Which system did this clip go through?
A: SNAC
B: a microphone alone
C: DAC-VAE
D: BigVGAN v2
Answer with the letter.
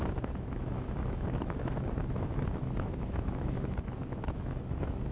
C